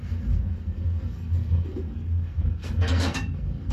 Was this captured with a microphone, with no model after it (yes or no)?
no